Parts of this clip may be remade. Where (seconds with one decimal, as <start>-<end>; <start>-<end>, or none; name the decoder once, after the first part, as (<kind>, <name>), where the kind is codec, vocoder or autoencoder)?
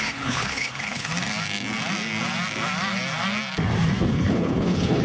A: 0.0-1.1 (codec, HILCodec); 4.1-5.0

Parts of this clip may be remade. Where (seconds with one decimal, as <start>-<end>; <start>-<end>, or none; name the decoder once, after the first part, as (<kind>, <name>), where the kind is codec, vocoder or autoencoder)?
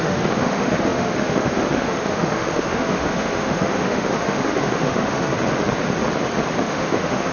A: 0.0-5.3 (autoencoder, DAC-VAE); 6.6-7.3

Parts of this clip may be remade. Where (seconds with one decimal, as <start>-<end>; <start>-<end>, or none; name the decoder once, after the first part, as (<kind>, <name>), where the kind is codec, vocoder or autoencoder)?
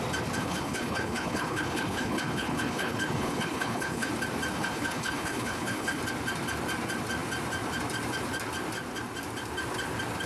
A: 0.4-4.1 (codec, HILCodec); 4.5-6.0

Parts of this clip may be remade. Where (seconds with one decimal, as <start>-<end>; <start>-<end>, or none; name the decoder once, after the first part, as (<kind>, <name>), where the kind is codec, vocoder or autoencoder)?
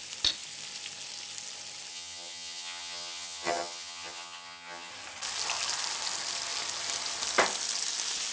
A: 1.9-4.9 (vocoder, HiFi-GAN)